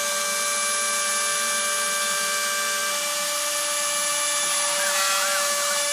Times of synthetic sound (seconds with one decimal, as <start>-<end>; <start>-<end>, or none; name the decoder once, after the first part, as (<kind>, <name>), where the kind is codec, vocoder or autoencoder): none